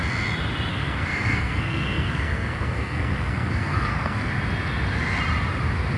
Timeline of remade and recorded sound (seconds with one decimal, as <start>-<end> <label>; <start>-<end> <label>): 0.0-0.7 recorded; 0.7-4.3 remade; 4.3-6.0 recorded